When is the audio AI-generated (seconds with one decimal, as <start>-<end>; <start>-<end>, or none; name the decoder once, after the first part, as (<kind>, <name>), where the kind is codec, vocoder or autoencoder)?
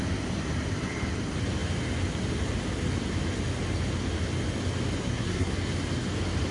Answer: 5.0-5.5 (codec, SNAC)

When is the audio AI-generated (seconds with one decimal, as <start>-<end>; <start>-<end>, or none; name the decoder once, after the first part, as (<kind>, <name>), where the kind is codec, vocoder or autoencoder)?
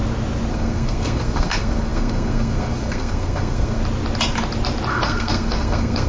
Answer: 0.5-3.8 (codec, SNAC); 4.9-6.1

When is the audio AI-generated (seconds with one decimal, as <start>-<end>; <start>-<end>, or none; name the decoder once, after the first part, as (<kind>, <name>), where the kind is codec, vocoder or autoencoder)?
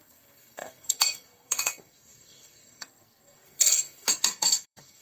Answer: 0.0-5.0 (codec, SNAC)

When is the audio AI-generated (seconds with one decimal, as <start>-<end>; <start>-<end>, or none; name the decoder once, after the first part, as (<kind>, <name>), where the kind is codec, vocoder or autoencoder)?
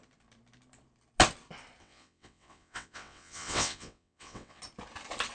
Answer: 1.8-4.6 (vocoder, WaveNeXt)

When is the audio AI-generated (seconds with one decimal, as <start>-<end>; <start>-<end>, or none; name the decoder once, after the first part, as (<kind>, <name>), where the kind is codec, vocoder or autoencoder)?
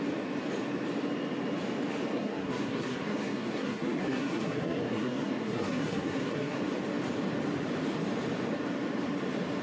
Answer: 2.1-6.6 (codec, SNAC)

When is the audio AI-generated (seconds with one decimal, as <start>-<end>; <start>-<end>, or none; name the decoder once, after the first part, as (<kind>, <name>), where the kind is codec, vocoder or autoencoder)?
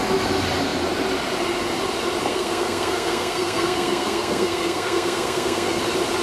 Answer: 2.3-5.8 (codec, SNAC)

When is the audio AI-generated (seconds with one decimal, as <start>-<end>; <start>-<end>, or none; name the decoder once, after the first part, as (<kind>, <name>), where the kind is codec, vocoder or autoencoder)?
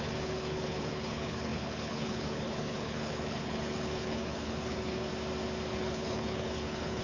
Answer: 0.0-5.1 (codec, HILCodec); 5.7-7.0